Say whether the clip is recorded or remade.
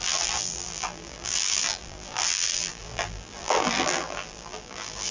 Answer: remade